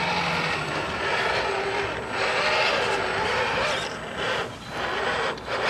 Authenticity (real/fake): real